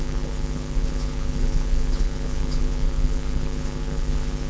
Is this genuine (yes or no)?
no